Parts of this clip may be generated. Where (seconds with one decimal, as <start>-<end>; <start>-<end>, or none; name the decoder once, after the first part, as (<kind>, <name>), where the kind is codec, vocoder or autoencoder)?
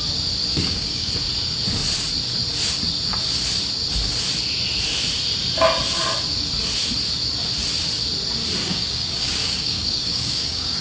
0.5-1.1 (codec, DAC); 8.6-10.8